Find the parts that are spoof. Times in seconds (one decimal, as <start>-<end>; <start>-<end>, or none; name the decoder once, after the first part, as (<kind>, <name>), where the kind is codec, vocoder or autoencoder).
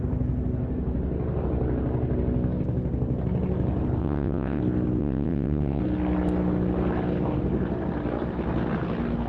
4.0-4.6 (vocoder, WaveNeXt); 5.0-5.8